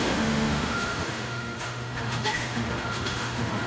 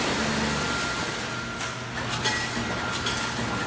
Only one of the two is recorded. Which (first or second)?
second